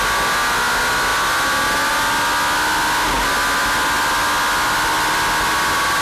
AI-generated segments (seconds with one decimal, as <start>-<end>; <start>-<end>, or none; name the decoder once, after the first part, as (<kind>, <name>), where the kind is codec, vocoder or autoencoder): none